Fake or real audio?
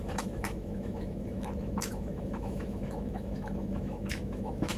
fake